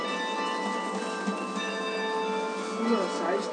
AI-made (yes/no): no